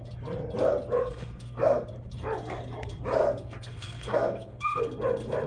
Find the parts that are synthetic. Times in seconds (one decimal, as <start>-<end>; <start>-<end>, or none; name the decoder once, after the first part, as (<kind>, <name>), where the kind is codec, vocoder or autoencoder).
1.0-1.9 (codec, SNAC); 3.2-4.8